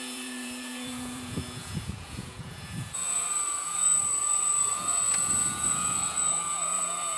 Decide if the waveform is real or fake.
fake